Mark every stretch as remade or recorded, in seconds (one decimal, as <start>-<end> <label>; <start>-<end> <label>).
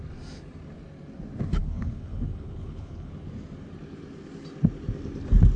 0.0-1.6 recorded; 1.6-3.1 remade; 3.1-5.6 recorded